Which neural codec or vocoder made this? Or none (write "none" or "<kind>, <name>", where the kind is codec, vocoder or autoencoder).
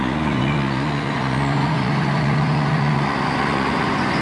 vocoder, Vocos